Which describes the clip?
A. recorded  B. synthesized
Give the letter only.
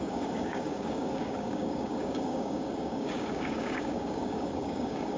B